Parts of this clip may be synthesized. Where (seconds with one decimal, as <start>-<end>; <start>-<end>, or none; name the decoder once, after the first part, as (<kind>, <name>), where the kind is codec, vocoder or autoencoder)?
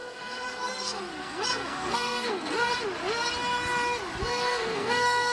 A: 0.0-2.7 (codec, SNAC); 4.2-5.3